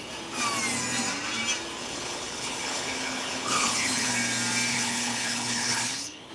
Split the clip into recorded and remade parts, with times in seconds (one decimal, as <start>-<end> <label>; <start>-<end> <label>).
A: 0.0-1.8 recorded; 1.8-4.1 remade; 4.1-4.7 recorded; 4.7-6.3 remade